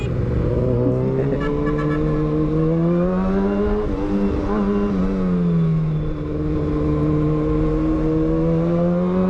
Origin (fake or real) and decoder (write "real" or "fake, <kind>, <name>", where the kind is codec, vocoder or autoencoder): real